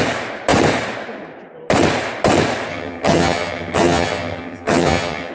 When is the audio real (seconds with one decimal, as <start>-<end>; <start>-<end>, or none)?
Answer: 0.0-2.7